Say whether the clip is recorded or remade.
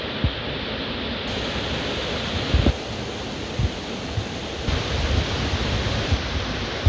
recorded